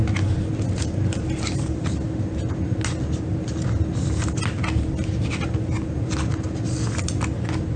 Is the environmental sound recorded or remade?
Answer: recorded